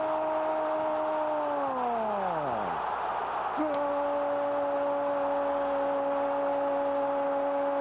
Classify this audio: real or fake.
real